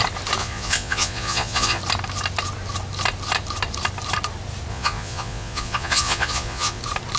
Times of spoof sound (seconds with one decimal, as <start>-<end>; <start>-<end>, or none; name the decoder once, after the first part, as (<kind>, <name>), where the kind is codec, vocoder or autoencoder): 0.4-1.8 (vocoder, Vocos); 4.7-6.8